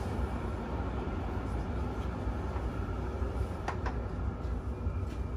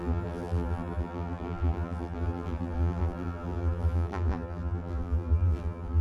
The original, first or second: first